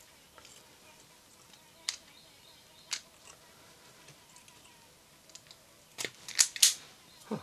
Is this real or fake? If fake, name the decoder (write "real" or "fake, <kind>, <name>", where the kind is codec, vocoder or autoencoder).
real